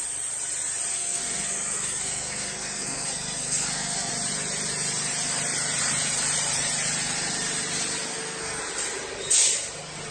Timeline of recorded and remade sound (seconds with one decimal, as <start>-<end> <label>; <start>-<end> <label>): 0.0-0.9 recorded; 0.9-4.1 remade; 4.1-8.1 recorded; 8.1-8.6 remade; 8.6-10.1 recorded